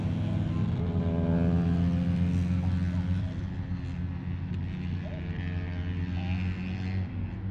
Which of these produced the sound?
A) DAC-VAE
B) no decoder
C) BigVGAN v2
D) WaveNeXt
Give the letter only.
B